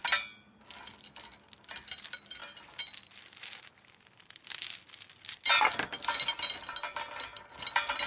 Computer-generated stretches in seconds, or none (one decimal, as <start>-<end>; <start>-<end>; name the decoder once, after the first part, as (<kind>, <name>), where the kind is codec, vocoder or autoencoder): none